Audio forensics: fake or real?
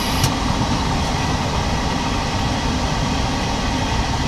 real